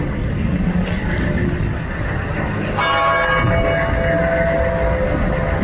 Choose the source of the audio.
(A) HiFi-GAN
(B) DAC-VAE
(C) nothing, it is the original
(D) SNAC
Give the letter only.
C